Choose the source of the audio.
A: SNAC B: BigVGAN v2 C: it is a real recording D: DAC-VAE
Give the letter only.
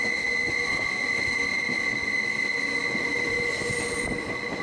C